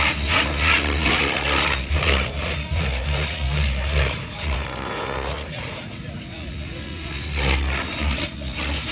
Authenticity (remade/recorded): remade